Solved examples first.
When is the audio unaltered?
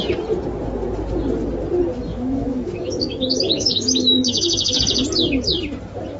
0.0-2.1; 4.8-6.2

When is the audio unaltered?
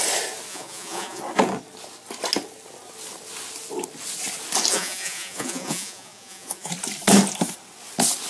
0.0-0.5; 1.2-4.7; 6.7-8.3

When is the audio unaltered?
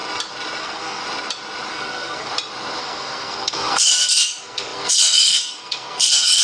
0.0-0.6; 1.0-1.7; 2.3-2.8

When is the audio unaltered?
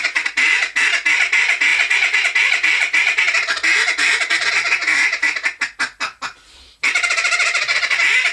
0.0-8.3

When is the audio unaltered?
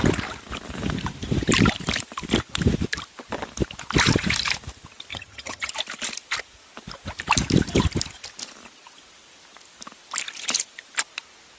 0.0-5.1; 5.7-11.6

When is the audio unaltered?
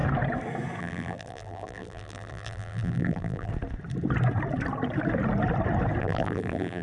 0.0-0.8; 3.5-6.0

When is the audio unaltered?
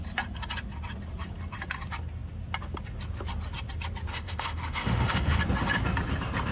0.0-4.1; 5.4-6.5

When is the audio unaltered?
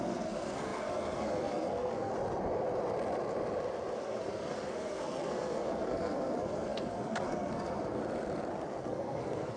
2.1-4.0; 8.0-8.8